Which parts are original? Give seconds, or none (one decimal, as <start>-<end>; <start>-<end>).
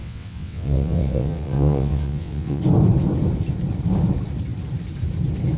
2.6-5.6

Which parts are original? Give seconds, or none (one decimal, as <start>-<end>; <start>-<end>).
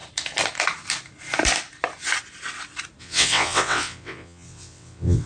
0.0-3.0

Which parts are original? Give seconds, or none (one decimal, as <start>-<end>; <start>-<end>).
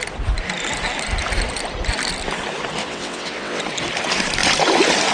0.0-2.8; 3.6-5.1